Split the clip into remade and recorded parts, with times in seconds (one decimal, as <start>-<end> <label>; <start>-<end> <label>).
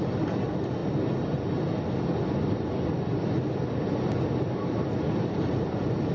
0.0-6.1 recorded